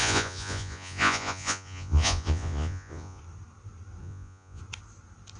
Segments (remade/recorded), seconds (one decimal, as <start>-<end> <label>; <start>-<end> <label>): 0.0-3.2 remade; 3.2-4.0 recorded; 4.0-4.6 remade; 4.6-5.4 recorded